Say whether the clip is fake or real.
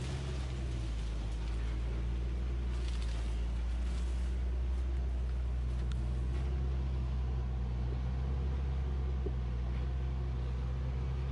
real